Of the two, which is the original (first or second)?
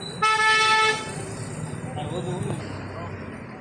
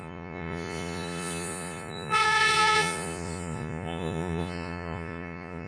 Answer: first